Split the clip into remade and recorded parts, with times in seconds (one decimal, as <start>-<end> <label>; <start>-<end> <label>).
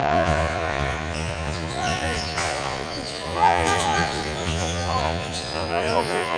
0.0-6.4 remade